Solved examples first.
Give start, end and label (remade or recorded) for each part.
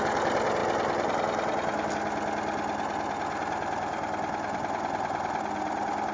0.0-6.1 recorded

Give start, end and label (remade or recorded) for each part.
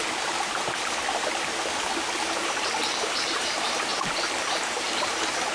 0.0-3.3 recorded; 3.3-3.9 remade; 3.9-4.6 recorded; 4.6-5.5 remade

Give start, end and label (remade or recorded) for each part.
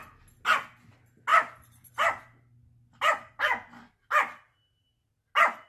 0.0-1.3 recorded; 1.3-1.9 remade; 1.9-2.6 recorded; 2.6-3.3 remade; 3.3-5.7 recorded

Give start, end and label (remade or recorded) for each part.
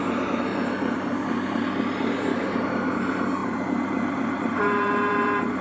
0.0-0.5 recorded; 0.5-1.1 remade; 1.1-2.3 recorded; 2.3-2.9 remade; 2.9-3.4 recorded; 3.4-5.6 remade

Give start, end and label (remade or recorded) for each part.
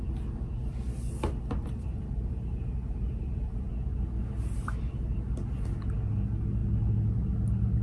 0.0-1.6 recorded; 1.6-3.7 remade; 3.7-7.8 recorded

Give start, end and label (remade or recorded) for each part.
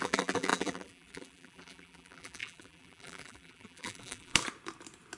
0.0-4.3 remade; 4.3-5.2 recorded